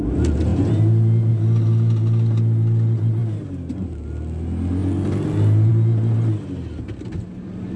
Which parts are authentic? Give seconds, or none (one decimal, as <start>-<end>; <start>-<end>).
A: 0.0-7.8